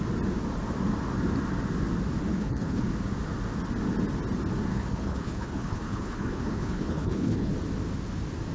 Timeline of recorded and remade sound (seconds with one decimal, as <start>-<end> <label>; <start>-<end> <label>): 0.0-2.3 recorded; 2.3-2.8 remade; 2.8-4.7 recorded; 4.7-7.5 remade; 7.5-8.5 recorded